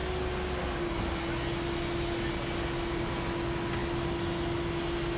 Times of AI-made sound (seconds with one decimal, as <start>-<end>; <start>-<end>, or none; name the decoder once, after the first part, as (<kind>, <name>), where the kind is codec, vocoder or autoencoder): none